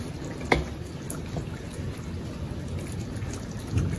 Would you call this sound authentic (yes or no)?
yes